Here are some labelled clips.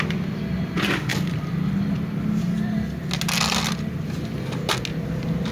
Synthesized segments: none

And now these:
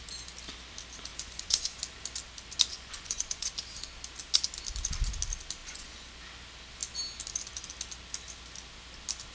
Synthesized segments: 1.1-1.8 (vocoder, Vocos); 2.7-3.5; 5.6-6.2

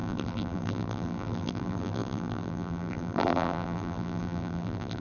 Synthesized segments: 0.0-5.0 (vocoder, BigVGAN v2)

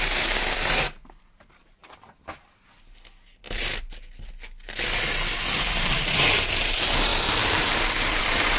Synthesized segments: 0.0-1.8 (vocoder, BigVGAN v2); 5.6-8.6

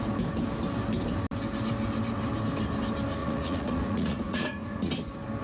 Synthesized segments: 3.2-4.9 (vocoder, Vocos)

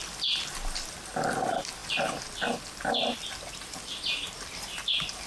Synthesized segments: none